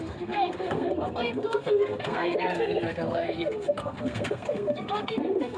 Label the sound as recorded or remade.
remade